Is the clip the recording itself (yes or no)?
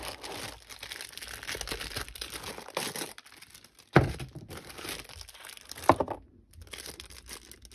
yes